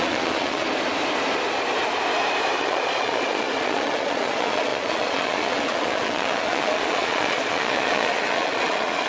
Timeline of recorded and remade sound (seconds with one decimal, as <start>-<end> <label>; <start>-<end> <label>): 0.0-0.6 remade; 0.6-2.6 recorded; 2.6-9.1 remade